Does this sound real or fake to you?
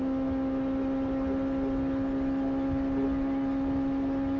real